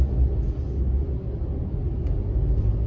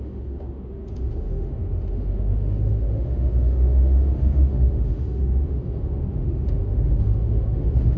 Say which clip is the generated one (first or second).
second